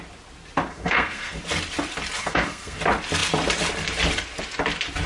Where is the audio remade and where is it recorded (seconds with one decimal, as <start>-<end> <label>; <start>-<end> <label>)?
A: 0.0-0.7 recorded; 0.7-1.4 remade; 1.4-2.2 recorded; 2.2-2.8 remade; 2.8-5.1 recorded